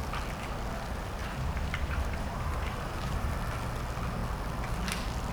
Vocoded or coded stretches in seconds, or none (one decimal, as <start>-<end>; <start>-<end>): 1.2-3.3